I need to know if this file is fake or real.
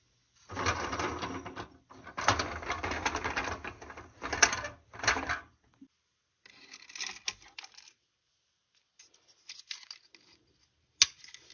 real